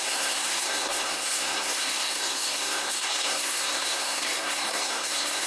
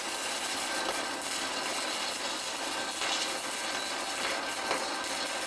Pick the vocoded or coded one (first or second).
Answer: first